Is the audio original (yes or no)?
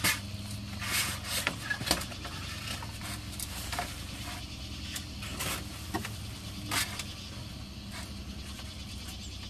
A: yes